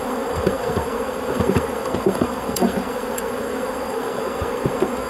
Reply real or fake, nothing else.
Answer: fake